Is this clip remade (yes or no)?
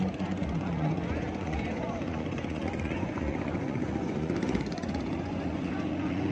yes